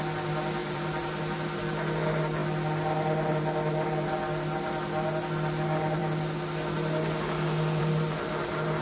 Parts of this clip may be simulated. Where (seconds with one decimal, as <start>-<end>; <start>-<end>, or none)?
0.6-1.2

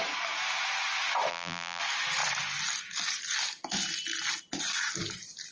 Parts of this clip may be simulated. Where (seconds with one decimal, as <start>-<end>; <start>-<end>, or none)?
1.3-1.8

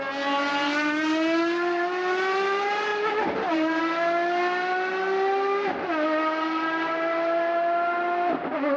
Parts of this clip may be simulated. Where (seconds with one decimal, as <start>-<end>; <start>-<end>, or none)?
2.9-3.8

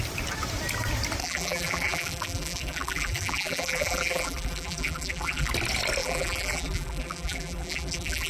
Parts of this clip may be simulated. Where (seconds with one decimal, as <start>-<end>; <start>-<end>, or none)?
1.2-5.5; 6.0-8.3

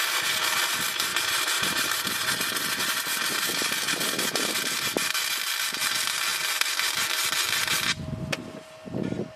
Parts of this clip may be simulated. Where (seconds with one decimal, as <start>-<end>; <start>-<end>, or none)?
1.1-2.3

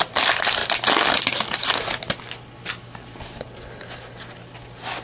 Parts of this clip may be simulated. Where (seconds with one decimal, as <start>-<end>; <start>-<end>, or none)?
none